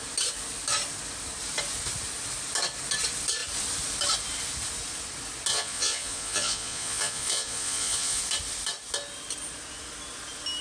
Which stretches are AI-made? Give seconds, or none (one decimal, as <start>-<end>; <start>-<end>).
5.5-8.2